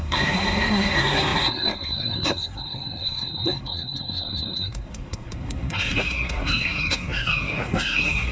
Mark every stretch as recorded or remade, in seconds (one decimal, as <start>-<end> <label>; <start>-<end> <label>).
0.0-8.3 remade